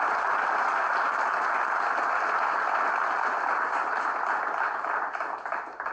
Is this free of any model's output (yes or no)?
yes